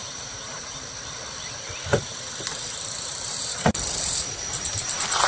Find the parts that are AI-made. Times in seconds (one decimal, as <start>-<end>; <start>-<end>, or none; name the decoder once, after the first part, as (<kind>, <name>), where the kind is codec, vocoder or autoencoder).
0.0-0.8 (vocoder, BigVGAN v2); 1.9-5.3